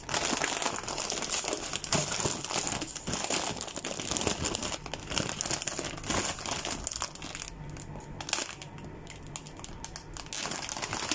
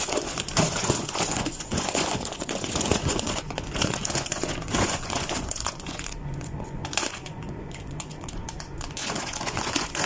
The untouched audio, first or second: first